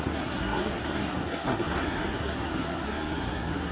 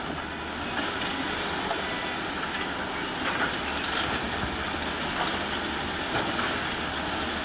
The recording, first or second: second